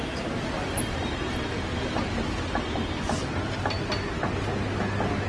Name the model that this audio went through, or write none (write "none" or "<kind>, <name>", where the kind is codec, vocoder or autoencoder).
none